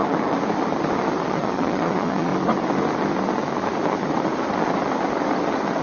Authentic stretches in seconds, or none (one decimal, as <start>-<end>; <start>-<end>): 0.0-1.3; 2.3-5.8